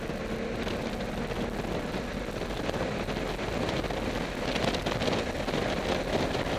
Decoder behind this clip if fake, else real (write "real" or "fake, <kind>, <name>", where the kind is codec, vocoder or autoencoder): real